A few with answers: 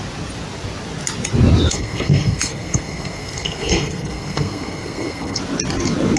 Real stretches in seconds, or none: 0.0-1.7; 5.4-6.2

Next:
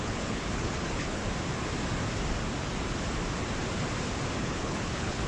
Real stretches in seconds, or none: 1.2-4.4

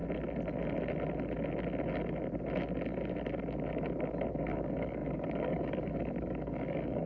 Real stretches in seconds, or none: 0.0-4.3

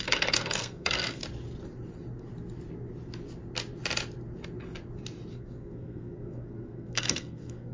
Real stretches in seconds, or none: 1.2-5.3